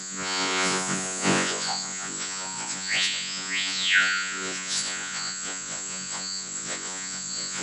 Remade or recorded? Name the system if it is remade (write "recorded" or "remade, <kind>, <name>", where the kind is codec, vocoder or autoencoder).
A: remade, vocoder, Vocos